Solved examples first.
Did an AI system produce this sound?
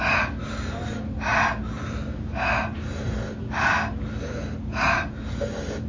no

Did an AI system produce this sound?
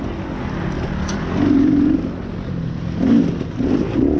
no